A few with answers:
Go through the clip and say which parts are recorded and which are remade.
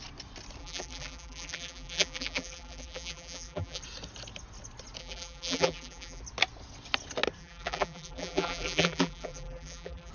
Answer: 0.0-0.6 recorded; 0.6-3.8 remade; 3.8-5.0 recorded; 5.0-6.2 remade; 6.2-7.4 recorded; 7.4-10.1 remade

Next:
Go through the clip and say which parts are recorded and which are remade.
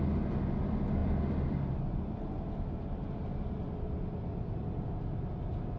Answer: 0.0-5.8 recorded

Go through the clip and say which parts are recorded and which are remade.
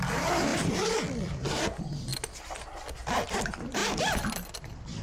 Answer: 0.0-2.1 remade; 2.1-2.8 recorded; 2.8-5.0 remade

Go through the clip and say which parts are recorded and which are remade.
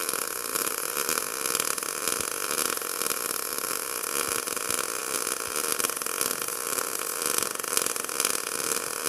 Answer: 0.0-0.5 recorded; 0.5-1.2 remade; 1.2-9.1 recorded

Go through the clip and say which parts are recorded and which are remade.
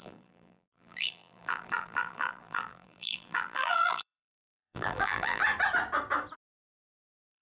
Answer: 0.0-5.4 remade; 5.4-6.9 recorded; 6.9-7.4 remade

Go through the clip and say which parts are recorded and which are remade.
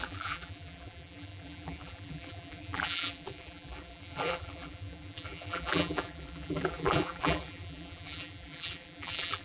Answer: 0.0-9.4 remade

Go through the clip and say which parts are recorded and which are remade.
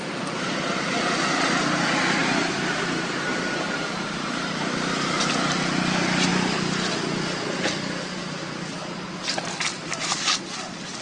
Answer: 0.0-2.2 recorded; 2.2-5.3 remade; 5.3-6.3 recorded; 6.3-6.9 remade; 6.9-11.0 recorded